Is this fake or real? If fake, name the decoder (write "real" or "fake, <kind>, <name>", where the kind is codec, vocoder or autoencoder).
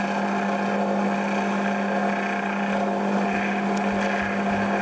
real